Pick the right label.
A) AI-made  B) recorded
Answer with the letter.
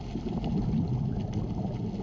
B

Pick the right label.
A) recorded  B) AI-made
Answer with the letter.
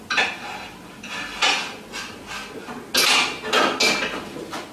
A